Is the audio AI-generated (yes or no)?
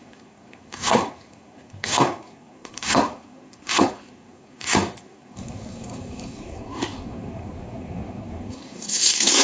yes